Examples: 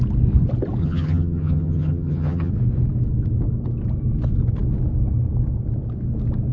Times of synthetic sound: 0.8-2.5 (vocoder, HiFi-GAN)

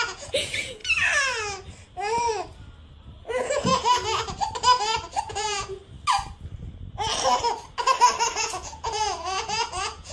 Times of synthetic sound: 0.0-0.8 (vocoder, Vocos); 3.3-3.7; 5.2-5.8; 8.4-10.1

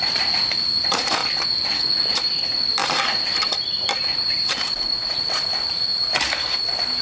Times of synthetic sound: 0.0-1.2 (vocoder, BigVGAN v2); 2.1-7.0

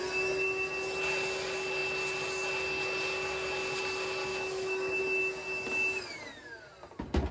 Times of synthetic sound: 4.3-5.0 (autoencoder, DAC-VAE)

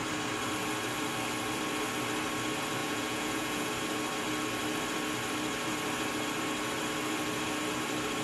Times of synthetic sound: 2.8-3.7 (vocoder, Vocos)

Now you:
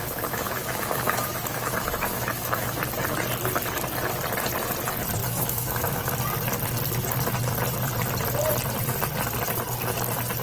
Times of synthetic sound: 0.0-2.8 (autoencoder, DAC-VAE); 5.2-6.1

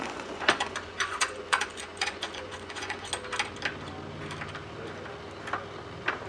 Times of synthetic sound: 0.0-3.1 (vocoder, Vocos)